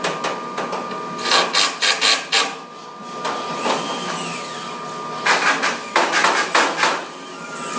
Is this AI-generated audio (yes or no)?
no